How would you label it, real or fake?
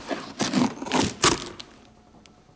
real